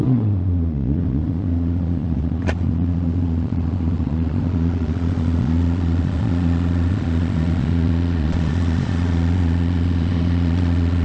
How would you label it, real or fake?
fake